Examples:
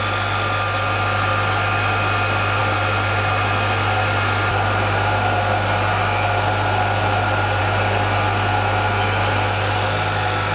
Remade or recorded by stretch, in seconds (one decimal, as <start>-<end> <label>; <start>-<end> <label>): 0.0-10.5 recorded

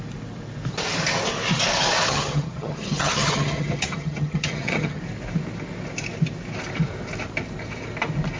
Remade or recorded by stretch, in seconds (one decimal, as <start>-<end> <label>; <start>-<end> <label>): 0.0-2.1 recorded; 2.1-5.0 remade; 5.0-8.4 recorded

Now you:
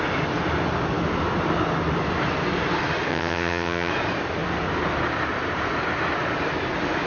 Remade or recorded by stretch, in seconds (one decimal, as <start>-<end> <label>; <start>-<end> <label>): 0.0-3.1 recorded; 3.1-3.9 remade; 3.9-7.1 recorded

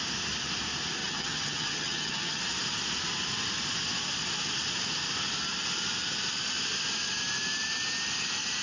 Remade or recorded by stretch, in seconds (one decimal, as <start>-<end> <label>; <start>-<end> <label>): 0.0-1.0 recorded; 1.0-2.4 remade; 2.4-8.6 recorded